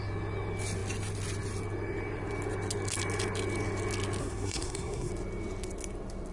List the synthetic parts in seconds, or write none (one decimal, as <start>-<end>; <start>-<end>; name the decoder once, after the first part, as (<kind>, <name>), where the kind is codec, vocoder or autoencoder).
4.2-5.1 (codec, SNAC)